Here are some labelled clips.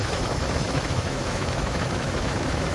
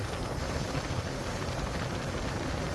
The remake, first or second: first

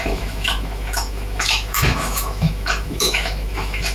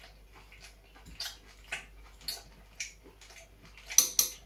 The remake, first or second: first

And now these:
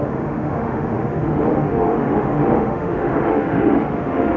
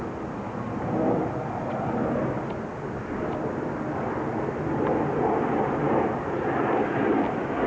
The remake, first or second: first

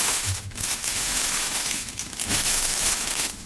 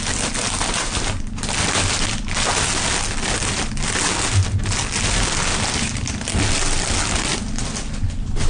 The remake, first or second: first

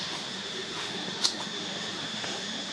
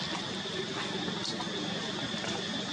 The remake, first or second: first